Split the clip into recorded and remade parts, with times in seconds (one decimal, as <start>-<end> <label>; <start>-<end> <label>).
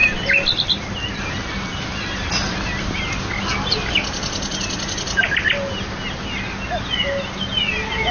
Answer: 0.0-8.1 recorded